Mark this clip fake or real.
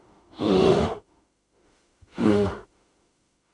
fake